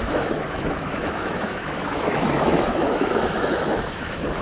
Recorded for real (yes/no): no